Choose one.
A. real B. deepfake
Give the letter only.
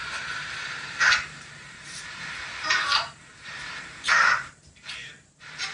B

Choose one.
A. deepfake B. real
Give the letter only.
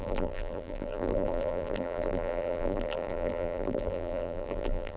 A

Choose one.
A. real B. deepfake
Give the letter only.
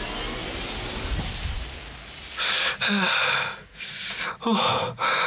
A